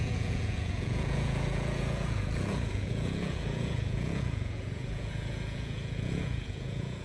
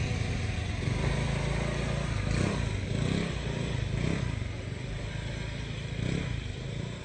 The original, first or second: second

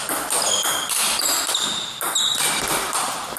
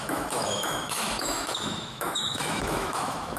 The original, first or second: first